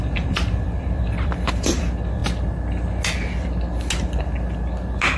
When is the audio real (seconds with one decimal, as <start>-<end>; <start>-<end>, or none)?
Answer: 2.2-5.2